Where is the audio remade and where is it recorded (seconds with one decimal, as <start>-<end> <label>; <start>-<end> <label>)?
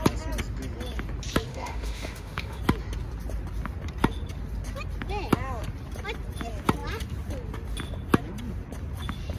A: 0.0-1.5 recorded; 1.5-2.6 remade; 2.6-9.4 recorded